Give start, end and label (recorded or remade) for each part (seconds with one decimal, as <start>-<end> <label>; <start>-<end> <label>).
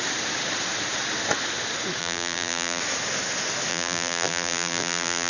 0.0-2.0 recorded; 2.0-2.8 remade; 2.8-3.7 recorded; 3.7-5.3 remade